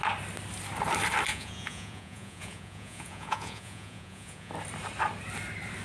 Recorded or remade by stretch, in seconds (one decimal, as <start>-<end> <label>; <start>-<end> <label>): 0.0-1.3 recorded; 1.3-4.5 remade; 4.5-5.8 recorded